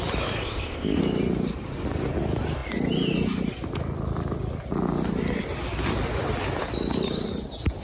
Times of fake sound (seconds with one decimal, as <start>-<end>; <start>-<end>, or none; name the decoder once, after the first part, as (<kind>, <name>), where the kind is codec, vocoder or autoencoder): 0.4-1.0 (codec, ZipCodec)